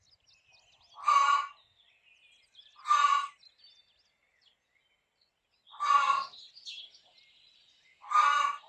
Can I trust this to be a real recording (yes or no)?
yes